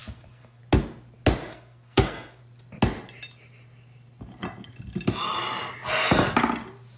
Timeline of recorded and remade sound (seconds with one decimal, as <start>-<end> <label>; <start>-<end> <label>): 0.0-0.6 remade; 0.6-1.5 recorded; 1.5-2.4 remade; 2.4-7.0 recorded